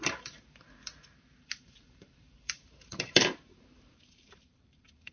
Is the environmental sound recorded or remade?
remade